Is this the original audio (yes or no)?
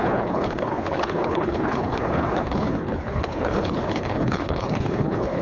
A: no